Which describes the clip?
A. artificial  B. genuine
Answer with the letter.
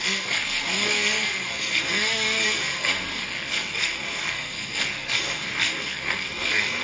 A